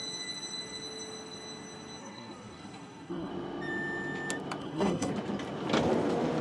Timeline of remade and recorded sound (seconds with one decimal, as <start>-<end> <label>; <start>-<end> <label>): 0.0-2.0 recorded; 2.0-3.3 remade; 3.3-4.6 recorded; 4.6-5.1 remade; 5.1-6.4 recorded